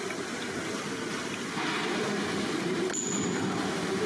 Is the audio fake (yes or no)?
no